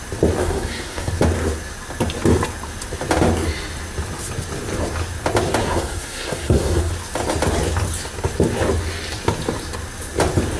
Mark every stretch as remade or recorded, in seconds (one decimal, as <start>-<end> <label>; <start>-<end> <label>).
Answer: 0.0-0.4 recorded; 0.4-1.1 remade; 1.1-5.6 recorded; 5.6-6.9 remade; 6.9-10.6 recorded